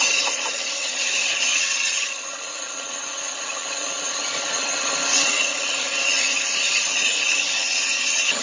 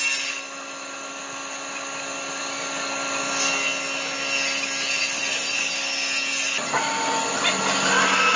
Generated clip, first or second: first